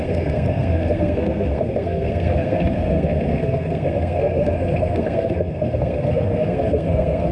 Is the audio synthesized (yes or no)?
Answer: yes